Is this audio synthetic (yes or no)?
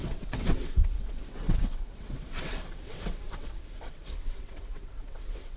yes